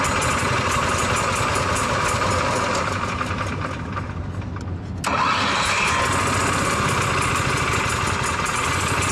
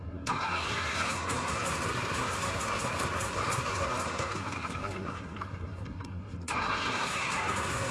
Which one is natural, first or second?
first